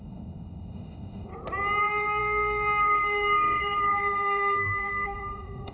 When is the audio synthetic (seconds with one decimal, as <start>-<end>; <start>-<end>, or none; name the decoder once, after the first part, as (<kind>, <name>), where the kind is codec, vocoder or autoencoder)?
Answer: 0.0-1.3 (autoencoder, DAC-VAE); 1.8-5.7